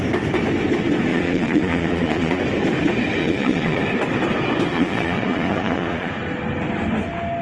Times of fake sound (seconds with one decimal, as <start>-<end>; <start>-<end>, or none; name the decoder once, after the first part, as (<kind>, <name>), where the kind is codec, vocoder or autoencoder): 1.1-2.4 (vocoder, Vocos); 3.2-3.8; 4.7-6.1